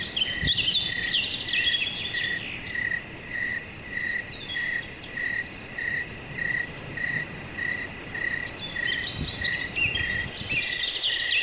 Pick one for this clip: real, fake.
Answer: real